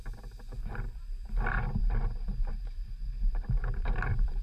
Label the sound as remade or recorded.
remade